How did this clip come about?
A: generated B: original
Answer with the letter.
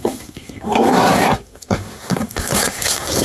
A